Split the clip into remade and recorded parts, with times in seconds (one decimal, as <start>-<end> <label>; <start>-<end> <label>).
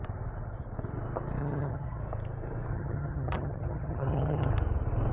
0.0-1.4 recorded; 1.4-2.0 remade; 2.0-2.7 recorded; 2.7-4.5 remade; 4.5-5.1 recorded